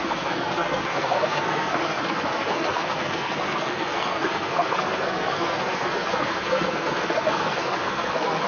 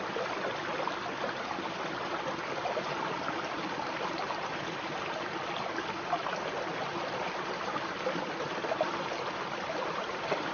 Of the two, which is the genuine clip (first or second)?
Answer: second